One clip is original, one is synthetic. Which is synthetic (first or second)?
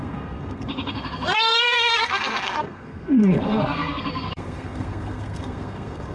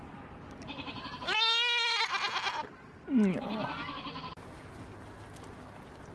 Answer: first